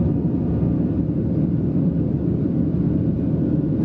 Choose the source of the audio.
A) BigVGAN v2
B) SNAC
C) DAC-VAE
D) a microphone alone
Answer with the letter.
D